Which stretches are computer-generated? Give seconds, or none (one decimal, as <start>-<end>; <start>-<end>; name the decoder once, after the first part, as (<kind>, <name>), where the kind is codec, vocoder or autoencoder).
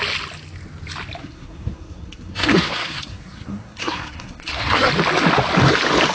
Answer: 1.2-4.9 (codec, SNAC)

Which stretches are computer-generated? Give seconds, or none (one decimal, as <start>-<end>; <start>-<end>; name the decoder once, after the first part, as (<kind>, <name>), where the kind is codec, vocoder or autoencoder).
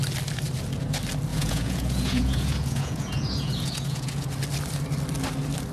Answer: 1.3-4.3 (vocoder, Vocos)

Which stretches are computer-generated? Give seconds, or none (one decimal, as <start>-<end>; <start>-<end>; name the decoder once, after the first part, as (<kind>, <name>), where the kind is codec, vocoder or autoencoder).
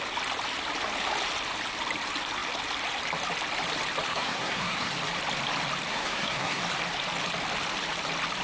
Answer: 4.1-4.9 (codec, SNAC); 5.9-6.6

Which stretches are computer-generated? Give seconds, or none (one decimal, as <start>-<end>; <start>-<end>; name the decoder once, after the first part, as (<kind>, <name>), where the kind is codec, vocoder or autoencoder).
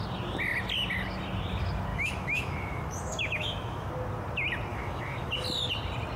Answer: 1.9-3.9 (autoencoder, DAC-VAE); 4.7-5.3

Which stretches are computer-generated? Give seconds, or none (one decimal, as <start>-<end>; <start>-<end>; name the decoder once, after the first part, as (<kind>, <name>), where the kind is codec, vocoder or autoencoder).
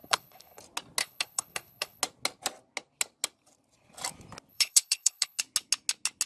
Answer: 0.0-0.6 (codec, HILCodec); 1.0-2.0; 4.5-5.4